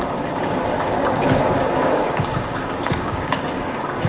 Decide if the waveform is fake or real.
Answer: fake